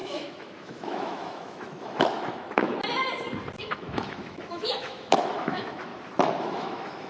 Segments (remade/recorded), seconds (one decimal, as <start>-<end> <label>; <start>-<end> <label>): 0.0-2.7 remade; 2.7-3.6 recorded; 3.6-5.9 remade; 5.9-6.4 recorded; 6.4-7.1 remade